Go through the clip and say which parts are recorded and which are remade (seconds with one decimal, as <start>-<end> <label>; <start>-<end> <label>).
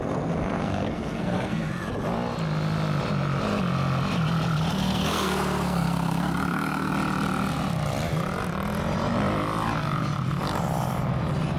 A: 0.0-1.7 remade; 1.7-4.7 recorded; 4.7-6.9 remade; 6.9-11.6 recorded